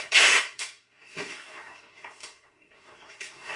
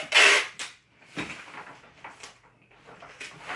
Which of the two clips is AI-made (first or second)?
first